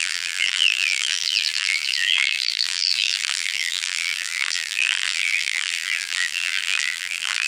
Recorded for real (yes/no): no